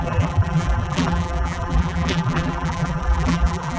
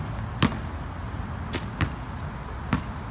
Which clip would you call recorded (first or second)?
second